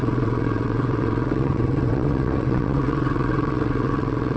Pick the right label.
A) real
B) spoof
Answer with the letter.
B